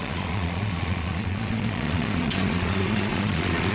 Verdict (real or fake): fake